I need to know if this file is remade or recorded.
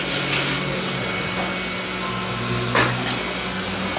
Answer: recorded